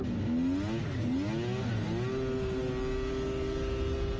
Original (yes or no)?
yes